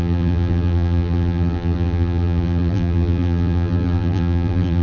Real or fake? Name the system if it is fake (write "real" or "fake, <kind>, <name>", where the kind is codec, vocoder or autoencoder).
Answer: fake, vocoder, BigVGAN v2